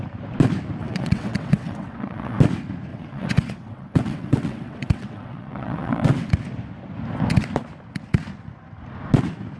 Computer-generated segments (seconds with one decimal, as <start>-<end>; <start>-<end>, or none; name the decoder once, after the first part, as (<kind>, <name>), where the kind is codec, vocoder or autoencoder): 0.8-2.4 (vocoder, WaveNeXt); 2.9-6.3